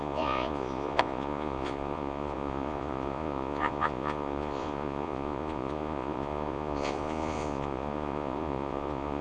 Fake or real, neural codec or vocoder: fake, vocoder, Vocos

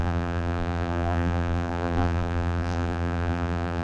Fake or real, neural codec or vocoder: fake, vocoder, BigVGAN v2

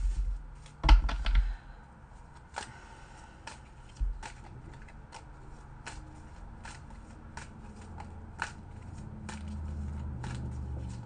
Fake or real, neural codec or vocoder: real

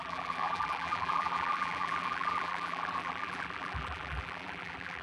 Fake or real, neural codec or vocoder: fake, vocoder, BigVGAN v2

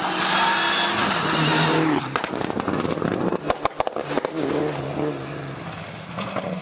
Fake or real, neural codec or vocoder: real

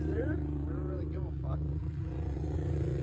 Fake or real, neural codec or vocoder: fake, vocoder, Vocos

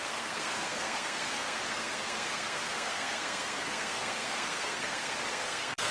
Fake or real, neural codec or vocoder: fake, codec, SNAC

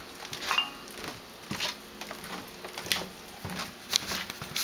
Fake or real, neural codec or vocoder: real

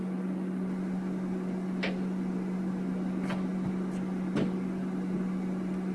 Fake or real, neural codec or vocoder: real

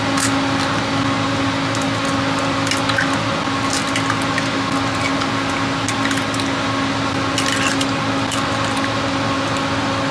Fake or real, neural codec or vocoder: real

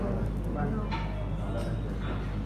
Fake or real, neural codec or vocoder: real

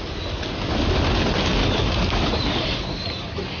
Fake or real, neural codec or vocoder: real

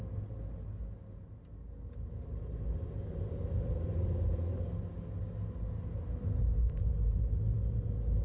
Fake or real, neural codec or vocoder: real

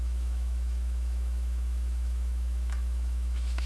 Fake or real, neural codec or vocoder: fake, autoencoder, DAC-VAE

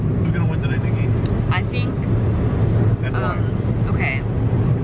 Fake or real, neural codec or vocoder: real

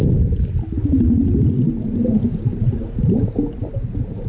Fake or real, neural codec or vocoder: real